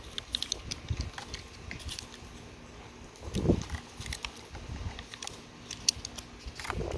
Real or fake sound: real